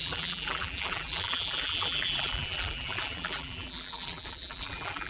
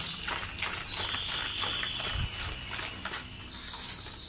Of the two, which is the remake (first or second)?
first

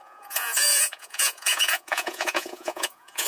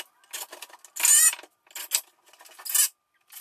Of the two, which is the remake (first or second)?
first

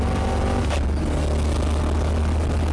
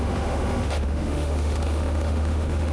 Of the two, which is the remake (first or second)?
second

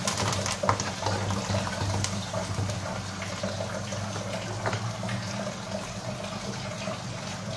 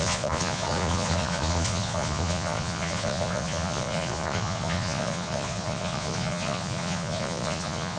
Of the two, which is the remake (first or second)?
second